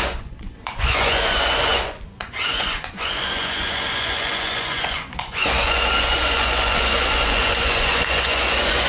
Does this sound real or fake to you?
fake